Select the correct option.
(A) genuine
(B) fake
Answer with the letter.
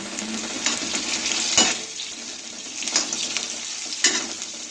A